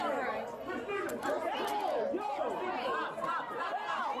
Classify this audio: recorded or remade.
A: recorded